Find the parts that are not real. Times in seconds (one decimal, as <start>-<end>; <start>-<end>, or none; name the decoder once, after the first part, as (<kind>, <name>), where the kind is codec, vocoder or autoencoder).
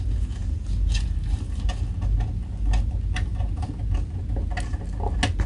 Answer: none